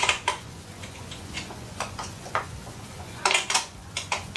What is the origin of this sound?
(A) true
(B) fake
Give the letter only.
B